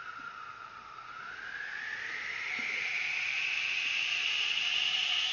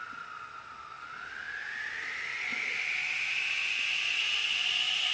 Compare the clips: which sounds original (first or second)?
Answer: second